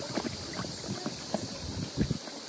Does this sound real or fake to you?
real